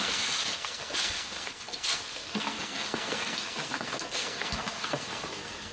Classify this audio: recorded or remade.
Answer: remade